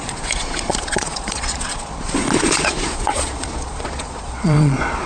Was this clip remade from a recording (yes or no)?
yes